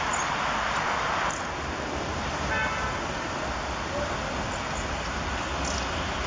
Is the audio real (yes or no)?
yes